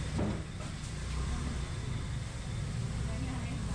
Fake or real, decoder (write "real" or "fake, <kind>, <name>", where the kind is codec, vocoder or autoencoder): real